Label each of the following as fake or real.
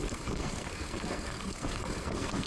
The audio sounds fake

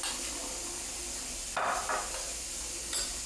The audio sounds real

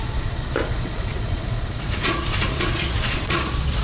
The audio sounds fake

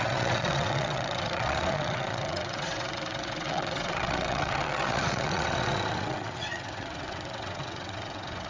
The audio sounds fake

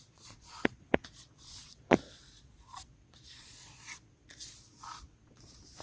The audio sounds fake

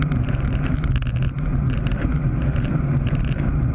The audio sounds real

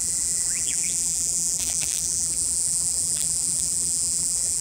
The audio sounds fake